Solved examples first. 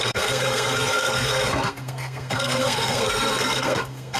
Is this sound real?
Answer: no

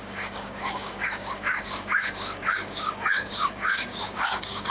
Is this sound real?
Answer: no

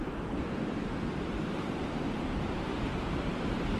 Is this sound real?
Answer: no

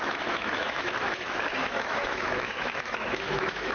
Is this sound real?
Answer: no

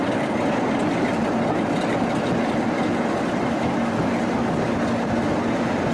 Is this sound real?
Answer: yes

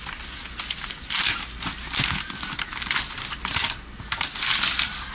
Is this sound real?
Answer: yes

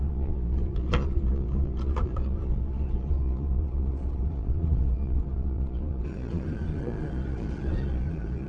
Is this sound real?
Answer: no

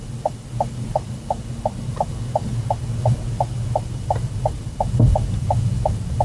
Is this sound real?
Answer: yes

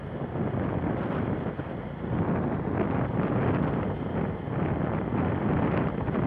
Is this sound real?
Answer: yes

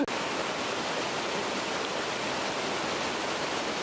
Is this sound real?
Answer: yes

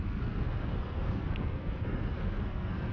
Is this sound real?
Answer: no